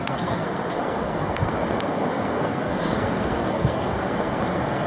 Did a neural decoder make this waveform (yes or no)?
yes